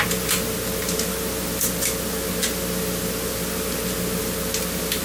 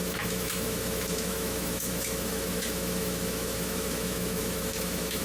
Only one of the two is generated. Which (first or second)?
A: second